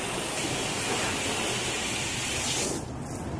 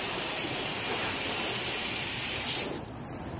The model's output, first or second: second